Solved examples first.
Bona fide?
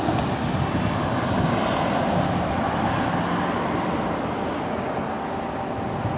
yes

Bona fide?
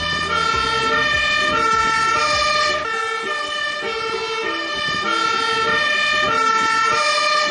yes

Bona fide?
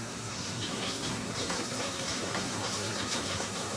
no